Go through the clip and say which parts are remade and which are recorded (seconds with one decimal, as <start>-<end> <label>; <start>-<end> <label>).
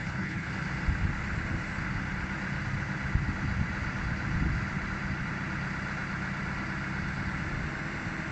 0.0-0.5 remade; 0.5-8.3 recorded